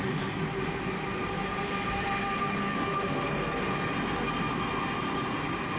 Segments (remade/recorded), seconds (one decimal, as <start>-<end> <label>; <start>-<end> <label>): 0.0-5.8 recorded